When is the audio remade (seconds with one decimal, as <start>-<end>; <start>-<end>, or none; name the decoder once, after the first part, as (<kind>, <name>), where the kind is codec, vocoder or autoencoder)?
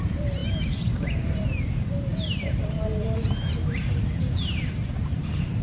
0.0-5.6 (vocoder, BigVGAN v2)